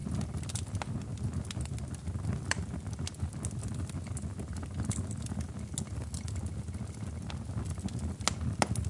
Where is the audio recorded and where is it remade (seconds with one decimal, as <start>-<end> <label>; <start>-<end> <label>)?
0.0-8.9 recorded